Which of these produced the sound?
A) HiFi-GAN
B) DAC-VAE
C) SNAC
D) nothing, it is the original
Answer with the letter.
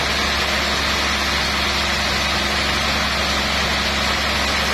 D